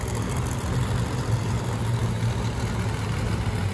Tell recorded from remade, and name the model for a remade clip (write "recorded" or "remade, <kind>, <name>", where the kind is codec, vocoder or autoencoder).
recorded